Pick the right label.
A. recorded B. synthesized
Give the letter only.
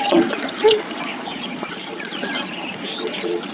B